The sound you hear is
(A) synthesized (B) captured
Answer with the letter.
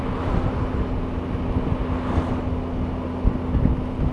B